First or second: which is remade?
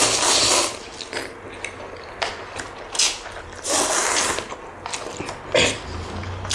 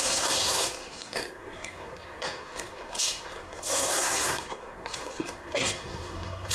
second